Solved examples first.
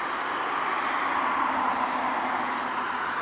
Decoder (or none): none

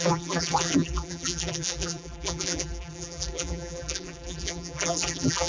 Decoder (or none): vocoder, BigVGAN v2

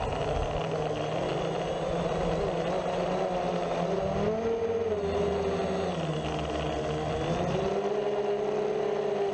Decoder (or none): none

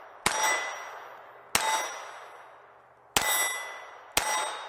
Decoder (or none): none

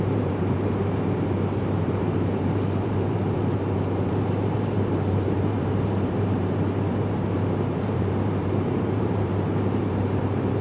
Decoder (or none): vocoder, BigVGAN v2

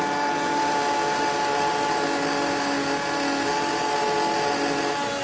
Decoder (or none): none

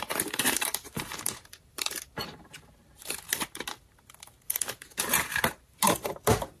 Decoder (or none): vocoder, BigVGAN v2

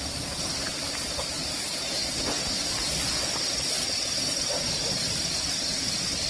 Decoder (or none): none